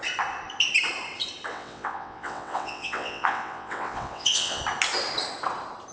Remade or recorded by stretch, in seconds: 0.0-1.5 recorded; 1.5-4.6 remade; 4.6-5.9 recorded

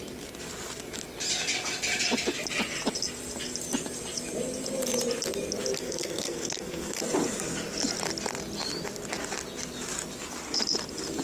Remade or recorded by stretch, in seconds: 0.0-5.8 recorded; 5.8-7.0 remade; 7.0-11.2 recorded

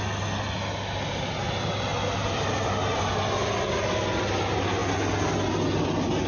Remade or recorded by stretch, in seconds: 0.0-6.3 recorded

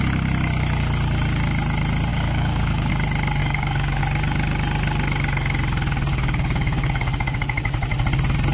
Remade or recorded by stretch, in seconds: 0.0-2.1 recorded; 2.1-2.9 remade; 2.9-3.4 recorded; 3.4-4.0 remade; 4.0-6.1 recorded; 6.1-7.6 remade; 7.6-8.5 recorded

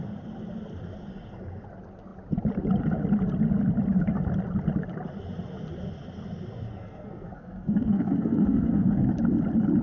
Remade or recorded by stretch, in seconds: 0.0-6.7 recorded; 6.7-9.1 remade; 9.1-9.8 recorded

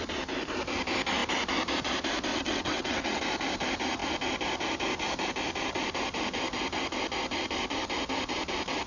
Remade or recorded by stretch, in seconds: 0.0-2.3 recorded; 2.3-3.2 remade; 3.2-8.9 recorded

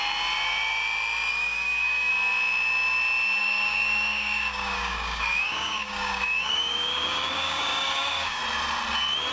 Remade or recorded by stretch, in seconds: 0.0-1.3 recorded; 1.3-2.1 remade; 2.1-3.4 recorded; 3.4-8.4 remade; 8.4-9.3 recorded

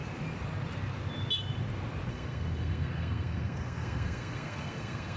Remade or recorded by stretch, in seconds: 0.0-2.1 recorded; 2.1-5.2 remade